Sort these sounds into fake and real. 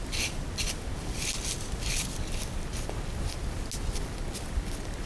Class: real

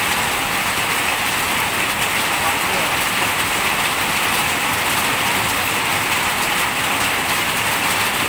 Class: real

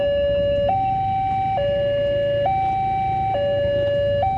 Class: real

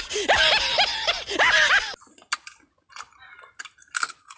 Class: real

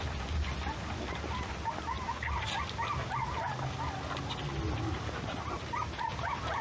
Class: real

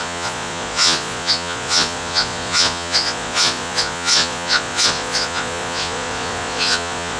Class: fake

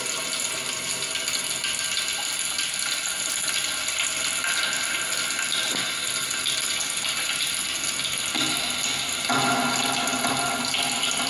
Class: real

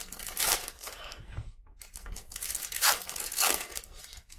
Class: fake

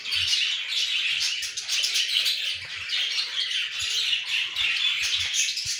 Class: real